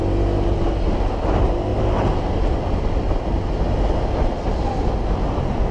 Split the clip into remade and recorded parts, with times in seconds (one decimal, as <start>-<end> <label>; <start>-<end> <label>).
0.0-5.7 recorded